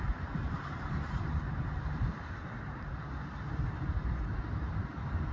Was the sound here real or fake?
fake